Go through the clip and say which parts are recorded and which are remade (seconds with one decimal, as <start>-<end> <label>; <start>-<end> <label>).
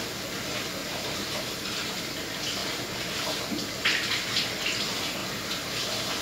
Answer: 0.0-0.8 recorded; 0.8-2.0 remade; 2.0-6.2 recorded